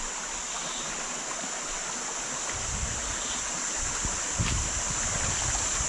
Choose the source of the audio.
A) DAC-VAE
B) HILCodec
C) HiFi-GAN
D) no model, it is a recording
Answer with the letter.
D